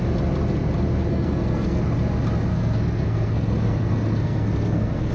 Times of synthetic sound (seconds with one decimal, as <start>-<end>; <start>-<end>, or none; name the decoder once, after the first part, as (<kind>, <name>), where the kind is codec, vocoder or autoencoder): 1.1-1.8 (codec, SNAC); 2.5-5.1